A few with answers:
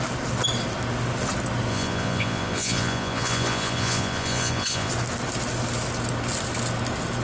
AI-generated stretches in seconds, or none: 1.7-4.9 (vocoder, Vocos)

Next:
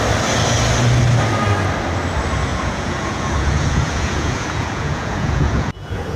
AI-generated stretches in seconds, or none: 2.5-6.2 (vocoder, Vocos)